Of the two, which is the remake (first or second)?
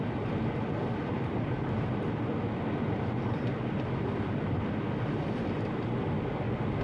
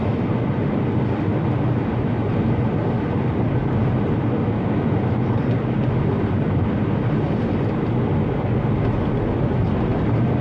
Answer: first